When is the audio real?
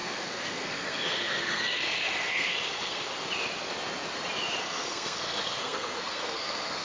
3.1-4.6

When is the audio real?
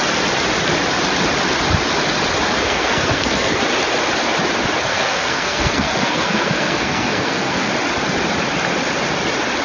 0.0-2.6; 3.6-4.9; 7.7-9.6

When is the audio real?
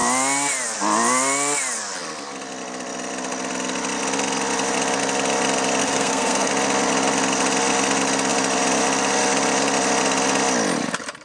0.0-5.8; 6.5-11.2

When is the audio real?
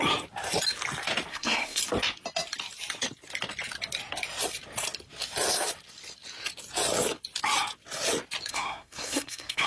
0.0-1.3; 1.8-8.5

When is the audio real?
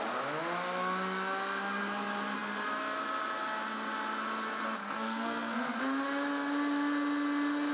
0.0-4.8; 5.8-7.7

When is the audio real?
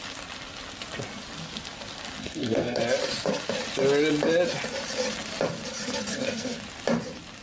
0.0-2.2; 2.8-6.1; 6.6-7.4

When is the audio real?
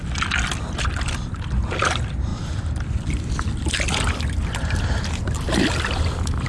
0.0-6.5